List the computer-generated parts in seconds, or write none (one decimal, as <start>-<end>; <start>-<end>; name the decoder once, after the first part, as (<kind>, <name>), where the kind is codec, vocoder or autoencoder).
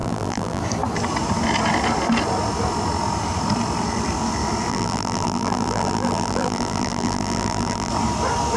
0.0-0.6 (vocoder, BigVGAN v2); 4.7-7.9